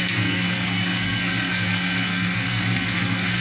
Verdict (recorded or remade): remade